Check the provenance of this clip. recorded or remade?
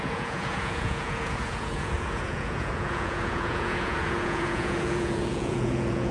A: remade